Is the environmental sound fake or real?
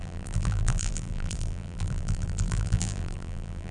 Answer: fake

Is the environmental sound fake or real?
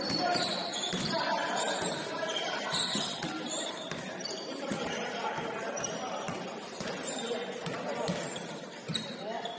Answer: fake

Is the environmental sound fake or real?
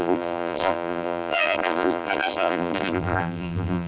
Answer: fake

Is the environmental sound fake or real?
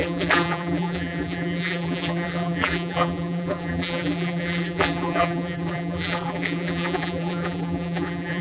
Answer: fake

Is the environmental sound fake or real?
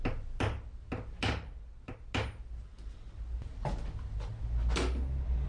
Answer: real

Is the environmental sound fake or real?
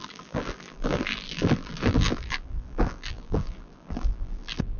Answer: fake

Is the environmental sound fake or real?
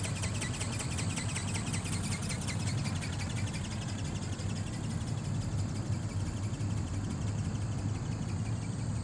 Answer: real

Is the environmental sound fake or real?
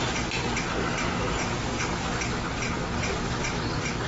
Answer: real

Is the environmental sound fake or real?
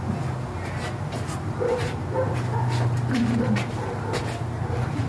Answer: real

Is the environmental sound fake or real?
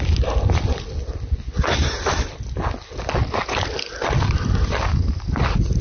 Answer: real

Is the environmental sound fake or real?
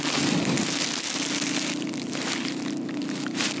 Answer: real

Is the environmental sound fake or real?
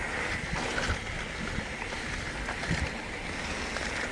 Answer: real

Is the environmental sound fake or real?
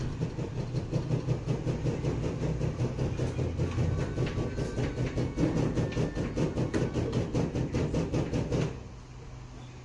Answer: real